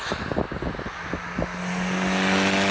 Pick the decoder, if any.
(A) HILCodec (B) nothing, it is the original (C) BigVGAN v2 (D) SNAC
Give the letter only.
B